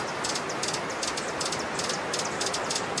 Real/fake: real